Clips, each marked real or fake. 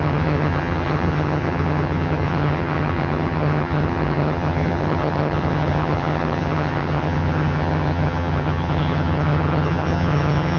fake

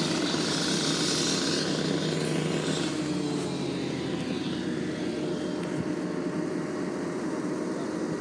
real